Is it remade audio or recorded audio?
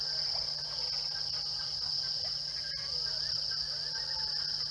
recorded